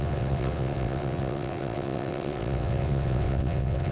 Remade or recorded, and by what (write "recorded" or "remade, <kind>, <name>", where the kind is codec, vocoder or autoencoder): remade, vocoder, WaveNeXt